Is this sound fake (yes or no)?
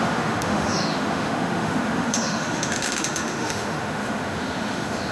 yes